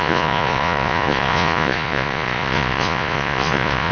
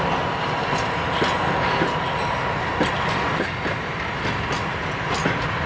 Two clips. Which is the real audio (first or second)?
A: second